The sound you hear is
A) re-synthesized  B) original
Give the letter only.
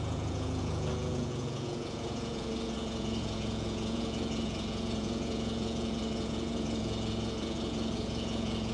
A